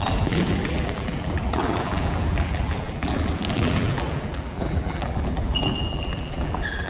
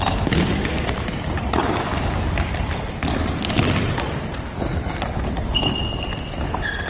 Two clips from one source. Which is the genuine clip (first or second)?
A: second